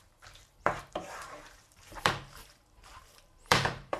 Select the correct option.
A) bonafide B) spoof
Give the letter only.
B